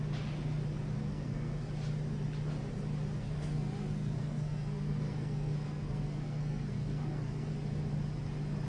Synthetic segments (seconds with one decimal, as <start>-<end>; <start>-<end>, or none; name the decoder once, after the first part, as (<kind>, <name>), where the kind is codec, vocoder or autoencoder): 1.0-1.7 (codec, SNAC); 3.2-7.5